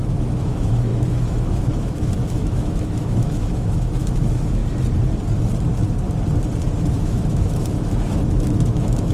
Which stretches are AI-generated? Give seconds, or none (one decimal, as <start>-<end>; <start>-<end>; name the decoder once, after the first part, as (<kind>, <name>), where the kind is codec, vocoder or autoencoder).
0.0-4.6 (autoencoder, DAC-VAE); 6.9-9.1